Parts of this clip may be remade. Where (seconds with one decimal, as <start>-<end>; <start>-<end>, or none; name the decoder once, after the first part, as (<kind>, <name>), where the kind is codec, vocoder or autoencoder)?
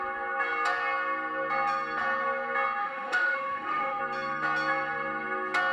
2.8-4.0 (autoencoder, DAC-VAE)